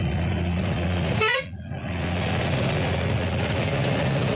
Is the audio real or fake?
fake